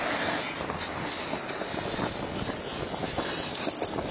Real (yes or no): yes